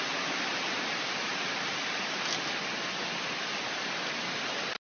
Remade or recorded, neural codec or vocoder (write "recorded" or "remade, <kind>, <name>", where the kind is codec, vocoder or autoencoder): recorded